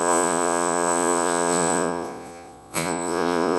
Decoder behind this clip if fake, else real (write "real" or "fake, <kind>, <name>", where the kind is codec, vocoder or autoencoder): fake, vocoder, Vocos